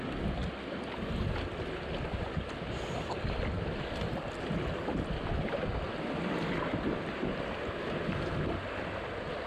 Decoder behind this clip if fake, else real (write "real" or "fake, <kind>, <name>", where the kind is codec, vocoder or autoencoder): real